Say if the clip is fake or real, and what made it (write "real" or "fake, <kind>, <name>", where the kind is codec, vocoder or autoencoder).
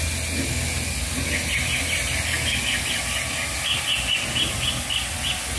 real